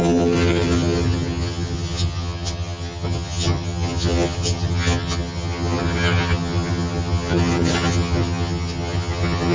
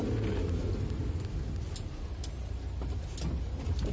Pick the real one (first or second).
second